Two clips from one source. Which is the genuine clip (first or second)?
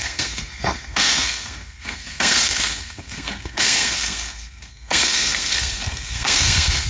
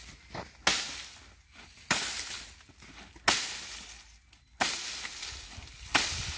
second